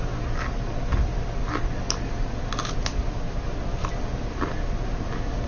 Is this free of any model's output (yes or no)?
yes